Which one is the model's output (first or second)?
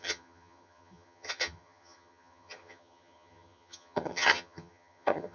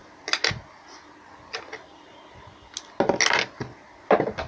first